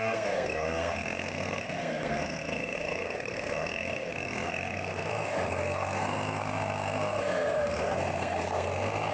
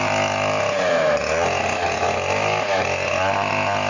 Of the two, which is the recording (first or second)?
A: second